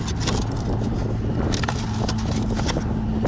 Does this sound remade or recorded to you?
recorded